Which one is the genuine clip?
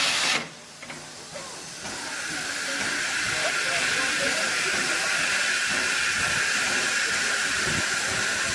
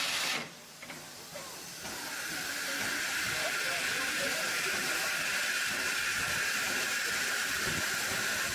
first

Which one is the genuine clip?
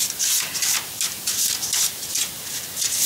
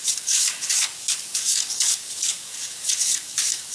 first